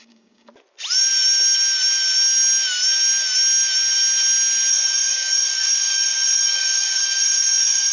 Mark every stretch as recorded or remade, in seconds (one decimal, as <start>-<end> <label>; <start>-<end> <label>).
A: 0.0-0.5 remade; 0.5-4.7 recorded; 4.7-7.9 remade